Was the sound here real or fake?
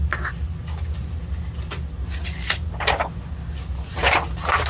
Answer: real